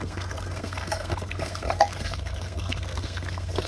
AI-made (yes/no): yes